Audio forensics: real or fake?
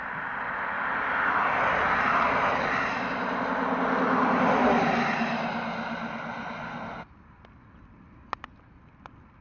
real